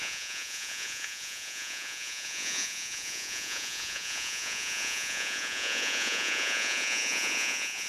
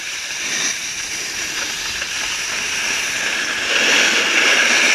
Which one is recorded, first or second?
second